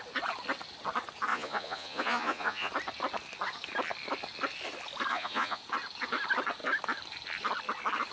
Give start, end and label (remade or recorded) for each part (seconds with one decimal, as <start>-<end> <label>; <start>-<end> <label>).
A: 0.0-1.3 recorded; 1.3-2.7 remade; 2.7-5.1 recorded; 5.1-5.6 remade; 5.6-8.1 recorded